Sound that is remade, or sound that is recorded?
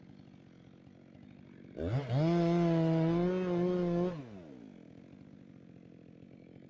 recorded